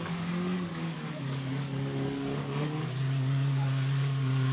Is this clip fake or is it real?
fake